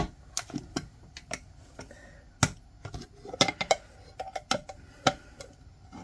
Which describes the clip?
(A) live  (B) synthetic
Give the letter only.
A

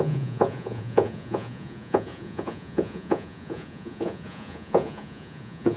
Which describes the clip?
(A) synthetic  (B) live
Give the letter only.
A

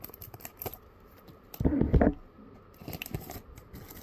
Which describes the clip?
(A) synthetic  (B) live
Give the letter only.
B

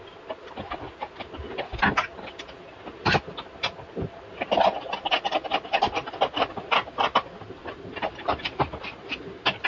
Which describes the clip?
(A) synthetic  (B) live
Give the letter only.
B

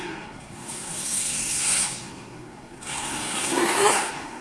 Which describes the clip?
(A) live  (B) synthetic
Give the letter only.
B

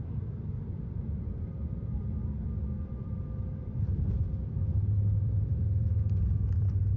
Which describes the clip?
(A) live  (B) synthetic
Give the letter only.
B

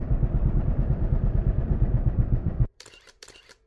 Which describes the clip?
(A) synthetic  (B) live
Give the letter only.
A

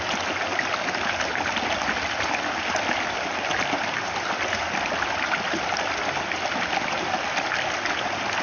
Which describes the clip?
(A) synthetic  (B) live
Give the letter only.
B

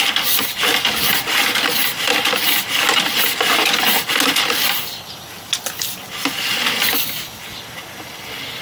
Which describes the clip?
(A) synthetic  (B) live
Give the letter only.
B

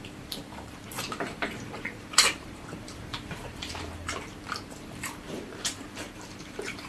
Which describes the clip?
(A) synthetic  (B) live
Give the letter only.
A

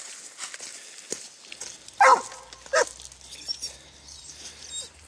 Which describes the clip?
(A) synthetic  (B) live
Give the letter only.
B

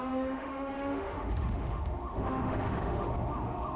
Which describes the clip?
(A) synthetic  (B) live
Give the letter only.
A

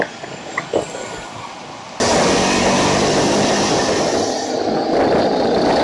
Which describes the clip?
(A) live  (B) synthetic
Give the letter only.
A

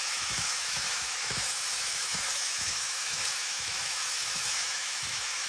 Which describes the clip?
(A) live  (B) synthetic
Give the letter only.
B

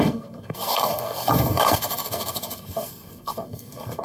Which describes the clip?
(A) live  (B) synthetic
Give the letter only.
B